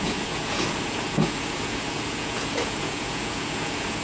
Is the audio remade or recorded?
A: remade